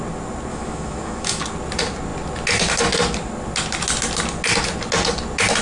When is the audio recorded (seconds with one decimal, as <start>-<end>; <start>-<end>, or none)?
0.0-0.5; 1.4-5.6